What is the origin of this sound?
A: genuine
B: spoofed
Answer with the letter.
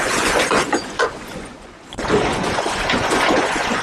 B